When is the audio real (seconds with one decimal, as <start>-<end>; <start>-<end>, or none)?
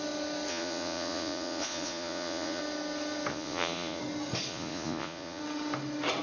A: 0.0-0.5; 2.6-3.3; 4.0-4.5; 5.4-6.2